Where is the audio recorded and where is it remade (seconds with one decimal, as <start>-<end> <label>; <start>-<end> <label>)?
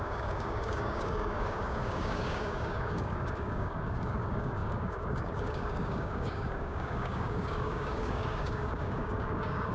0.0-9.7 remade